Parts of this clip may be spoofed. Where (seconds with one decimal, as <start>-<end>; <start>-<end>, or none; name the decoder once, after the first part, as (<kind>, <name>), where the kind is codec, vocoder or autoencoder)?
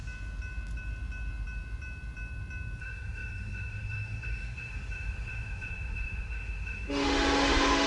2.8-7.9 (autoencoder, DAC-VAE)